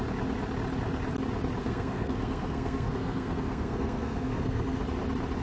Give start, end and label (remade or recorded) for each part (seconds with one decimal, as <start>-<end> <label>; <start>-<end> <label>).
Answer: 0.0-1.6 recorded; 1.6-4.8 remade; 4.8-5.4 recorded